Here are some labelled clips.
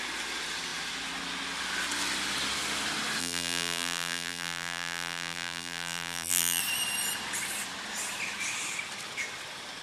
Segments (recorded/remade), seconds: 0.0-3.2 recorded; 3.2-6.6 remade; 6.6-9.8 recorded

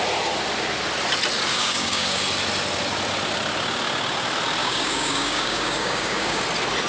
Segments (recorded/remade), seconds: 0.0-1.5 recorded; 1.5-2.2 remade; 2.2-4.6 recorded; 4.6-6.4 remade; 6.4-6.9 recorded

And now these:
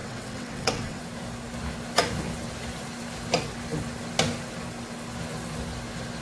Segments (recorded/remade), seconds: 0.0-1.0 remade; 1.0-6.2 recorded

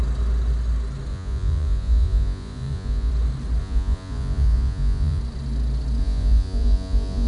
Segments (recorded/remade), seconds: 0.0-1.1 recorded; 1.1-3.1 remade; 3.1-3.6 recorded; 3.6-5.2 remade; 5.2-6.0 recorded; 6.0-7.3 remade

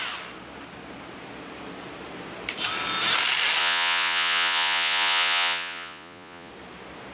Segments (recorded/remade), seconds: 0.0-3.6 recorded; 3.6-6.5 remade; 6.5-7.1 recorded

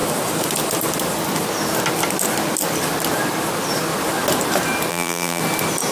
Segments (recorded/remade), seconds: 0.0-4.9 recorded; 4.9-5.4 remade; 5.4-5.9 recorded

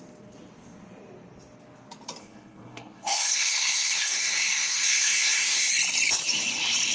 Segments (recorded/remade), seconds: 0.0-2.2 recorded; 2.2-5.7 remade; 5.7-6.9 recorded

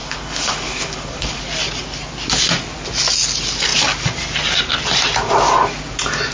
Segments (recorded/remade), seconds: 0.0-1.4 remade; 1.4-6.3 recorded